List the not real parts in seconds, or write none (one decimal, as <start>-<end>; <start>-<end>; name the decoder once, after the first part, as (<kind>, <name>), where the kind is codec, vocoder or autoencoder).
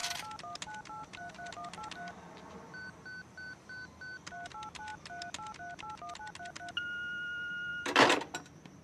none